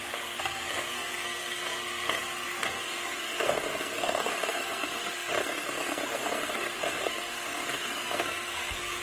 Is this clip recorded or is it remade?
remade